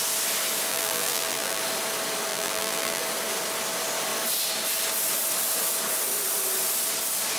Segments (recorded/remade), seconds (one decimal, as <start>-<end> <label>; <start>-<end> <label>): 0.0-0.7 recorded; 0.7-1.6 remade; 1.6-2.3 recorded; 2.3-3.0 remade; 3.0-7.4 recorded